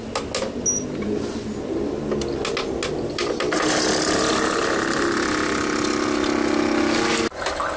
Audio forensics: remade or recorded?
recorded